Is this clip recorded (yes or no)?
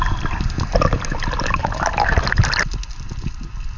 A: yes